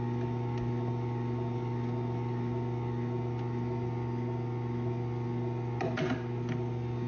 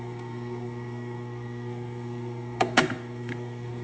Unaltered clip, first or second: first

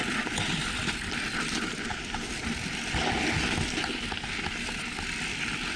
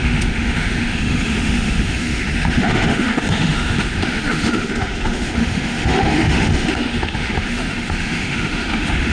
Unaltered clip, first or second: first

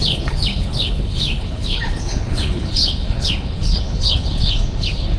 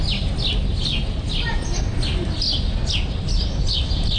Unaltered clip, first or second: second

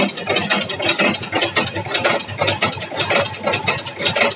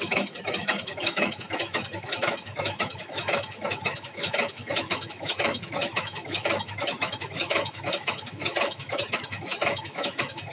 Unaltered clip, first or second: first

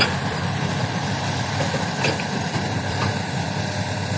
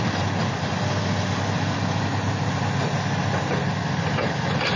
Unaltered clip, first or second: second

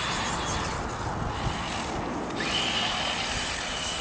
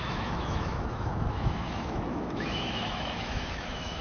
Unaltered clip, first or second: first